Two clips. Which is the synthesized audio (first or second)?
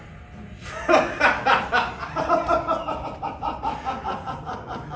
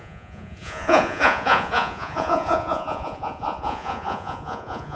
second